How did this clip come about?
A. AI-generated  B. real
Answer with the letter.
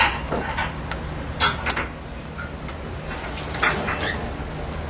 B